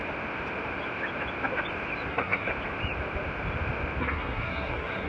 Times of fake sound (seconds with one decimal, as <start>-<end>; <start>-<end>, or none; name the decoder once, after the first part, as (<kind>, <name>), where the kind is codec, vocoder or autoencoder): 2.1-2.5 (codec, SNAC); 4.0-5.1